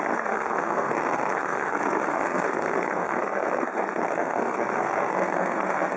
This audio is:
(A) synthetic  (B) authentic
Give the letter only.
A